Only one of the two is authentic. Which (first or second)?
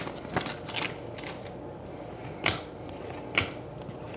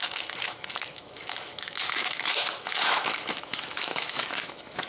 first